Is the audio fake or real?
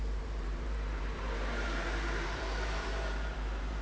fake